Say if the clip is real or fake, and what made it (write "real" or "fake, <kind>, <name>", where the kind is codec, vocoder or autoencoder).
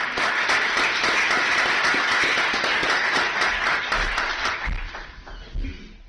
real